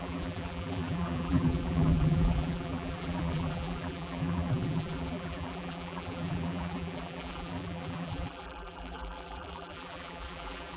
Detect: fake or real fake